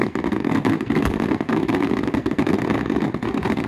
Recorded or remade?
remade